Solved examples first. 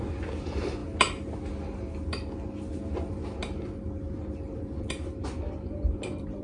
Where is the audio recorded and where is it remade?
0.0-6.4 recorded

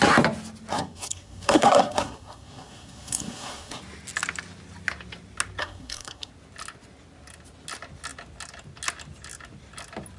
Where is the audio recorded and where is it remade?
0.0-0.7 recorded; 0.7-3.8 remade; 3.8-5.6 recorded; 5.6-6.3 remade; 6.3-10.2 recorded

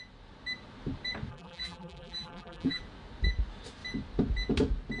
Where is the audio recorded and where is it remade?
0.0-1.3 recorded; 1.3-2.8 remade; 2.8-5.0 recorded

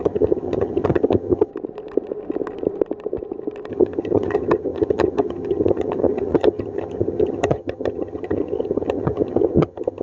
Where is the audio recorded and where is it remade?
0.0-1.5 remade; 1.5-3.7 recorded; 3.7-10.0 remade

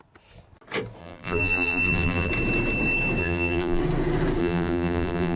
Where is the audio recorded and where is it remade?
0.0-1.0 recorded; 1.0-2.3 remade; 2.3-3.2 recorded; 3.2-3.8 remade; 3.8-4.4 recorded; 4.4-5.4 remade